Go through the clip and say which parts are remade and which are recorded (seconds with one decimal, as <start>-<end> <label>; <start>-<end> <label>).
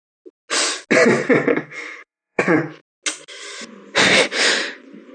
0.0-1.5 recorded; 1.5-2.4 remade; 2.4-5.1 recorded